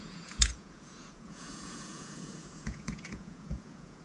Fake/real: fake